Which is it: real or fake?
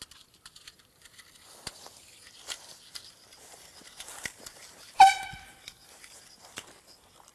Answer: real